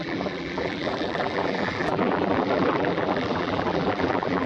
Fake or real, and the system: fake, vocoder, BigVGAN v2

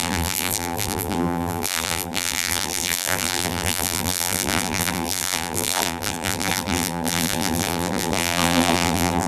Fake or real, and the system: fake, vocoder, BigVGAN v2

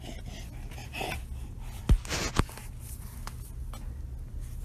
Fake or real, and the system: real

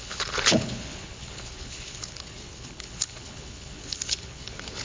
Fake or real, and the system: fake, codec, HILCodec